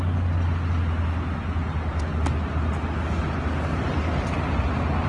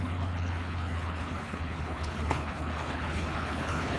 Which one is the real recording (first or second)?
first